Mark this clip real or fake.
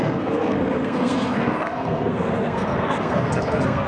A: fake